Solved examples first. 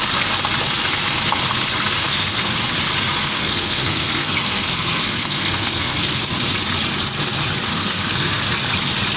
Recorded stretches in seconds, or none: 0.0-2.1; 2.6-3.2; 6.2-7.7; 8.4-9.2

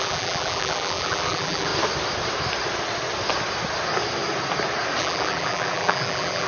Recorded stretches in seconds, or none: 1.7-5.0

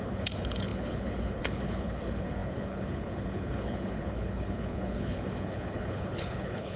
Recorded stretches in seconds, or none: none